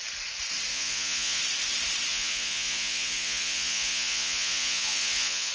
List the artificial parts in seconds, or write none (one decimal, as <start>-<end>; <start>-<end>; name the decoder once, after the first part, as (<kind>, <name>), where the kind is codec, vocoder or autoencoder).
0.7-1.4 (vocoder, Vocos); 2.1-5.5